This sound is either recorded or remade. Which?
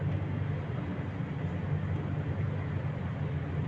recorded